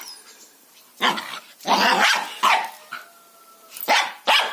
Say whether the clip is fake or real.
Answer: real